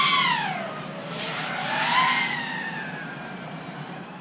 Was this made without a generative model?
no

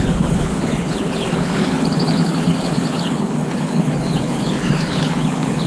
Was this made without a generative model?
no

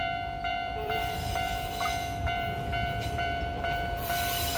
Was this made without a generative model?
no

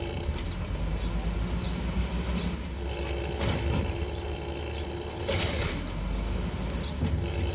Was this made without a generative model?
yes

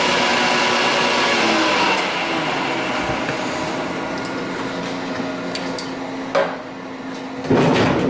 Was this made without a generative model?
yes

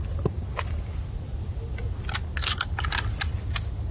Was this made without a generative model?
yes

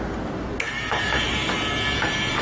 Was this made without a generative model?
yes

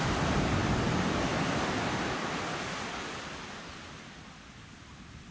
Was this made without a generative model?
yes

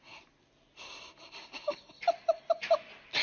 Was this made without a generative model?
yes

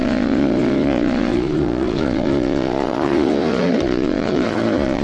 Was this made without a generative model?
no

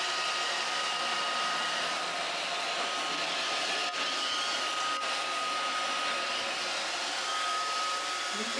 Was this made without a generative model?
yes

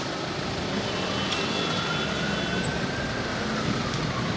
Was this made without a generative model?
yes